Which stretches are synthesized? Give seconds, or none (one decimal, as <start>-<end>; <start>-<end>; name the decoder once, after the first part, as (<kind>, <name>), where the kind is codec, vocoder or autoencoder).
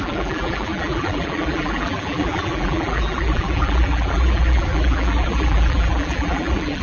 0.0-6.8 (vocoder, BigVGAN v2)